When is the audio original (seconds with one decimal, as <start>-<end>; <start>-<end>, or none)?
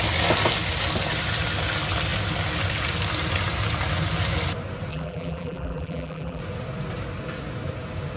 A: 0.0-4.9; 6.4-8.2